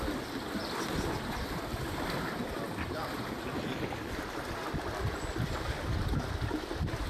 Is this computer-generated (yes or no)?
no